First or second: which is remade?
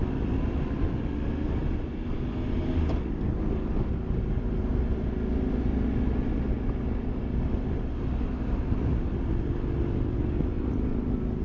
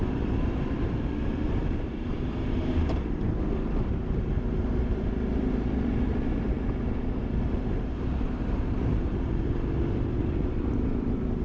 second